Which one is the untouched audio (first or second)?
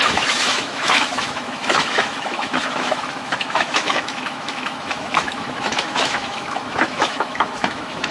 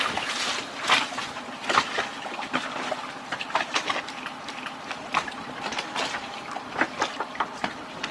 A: second